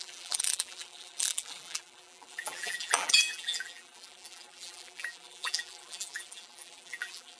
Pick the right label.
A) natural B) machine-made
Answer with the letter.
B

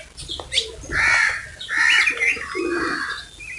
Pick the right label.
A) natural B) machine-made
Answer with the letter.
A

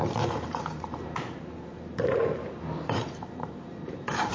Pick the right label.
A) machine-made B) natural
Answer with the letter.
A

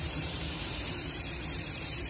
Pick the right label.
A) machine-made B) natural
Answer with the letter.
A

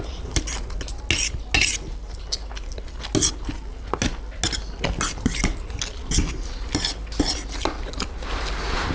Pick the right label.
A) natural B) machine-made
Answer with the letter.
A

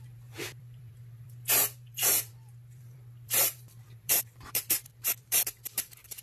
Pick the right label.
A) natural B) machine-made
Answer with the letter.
B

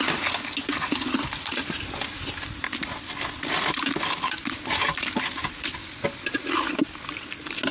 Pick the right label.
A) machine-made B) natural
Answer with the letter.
B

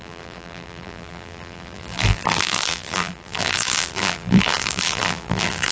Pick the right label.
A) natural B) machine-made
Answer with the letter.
B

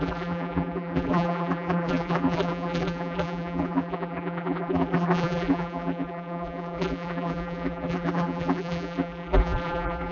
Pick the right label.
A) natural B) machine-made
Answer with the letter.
B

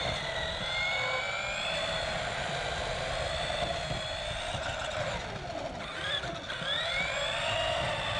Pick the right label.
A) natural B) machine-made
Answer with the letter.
A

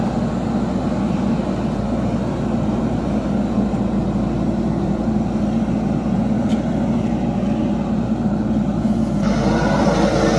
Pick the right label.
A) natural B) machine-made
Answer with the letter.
A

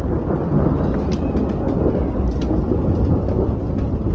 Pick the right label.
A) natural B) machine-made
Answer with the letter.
A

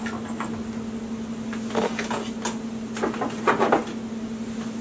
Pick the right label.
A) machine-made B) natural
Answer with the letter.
B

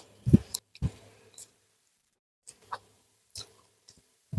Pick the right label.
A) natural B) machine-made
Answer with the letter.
B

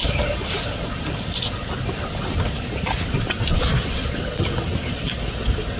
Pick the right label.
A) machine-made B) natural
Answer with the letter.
A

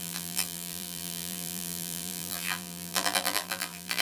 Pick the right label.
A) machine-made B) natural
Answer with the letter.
A